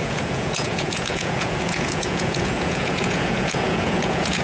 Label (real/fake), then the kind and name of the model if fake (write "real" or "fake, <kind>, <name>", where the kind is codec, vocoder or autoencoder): fake, vocoder, Vocos